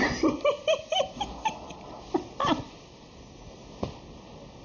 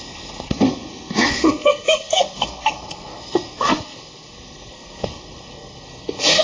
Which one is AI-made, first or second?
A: second